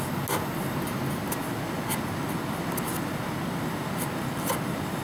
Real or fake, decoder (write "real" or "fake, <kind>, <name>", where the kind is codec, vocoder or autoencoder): real